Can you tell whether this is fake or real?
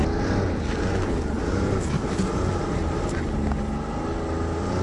real